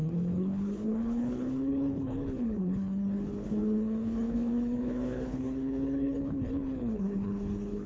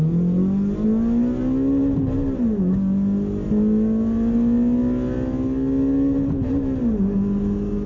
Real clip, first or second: second